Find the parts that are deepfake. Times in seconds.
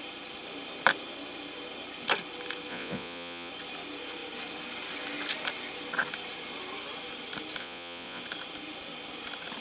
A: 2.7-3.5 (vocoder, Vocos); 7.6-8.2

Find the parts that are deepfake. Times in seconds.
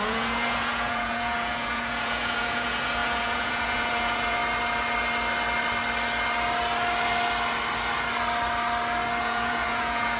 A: 0.0-4.4 (vocoder, Vocos); 9.2-10.2